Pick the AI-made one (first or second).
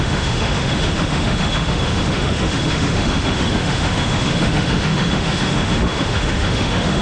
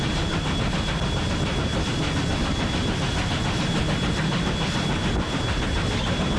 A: first